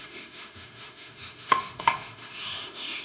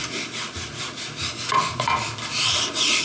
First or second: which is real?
second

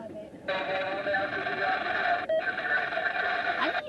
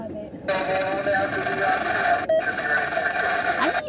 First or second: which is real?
second